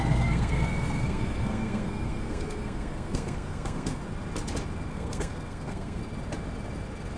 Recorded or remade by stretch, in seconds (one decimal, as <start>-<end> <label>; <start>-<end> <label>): 0.0-4.0 remade; 4.0-4.9 recorded; 4.9-6.0 remade; 6.0-7.2 recorded